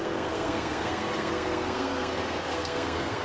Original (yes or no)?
no